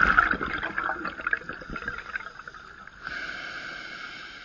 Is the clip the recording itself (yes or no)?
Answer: yes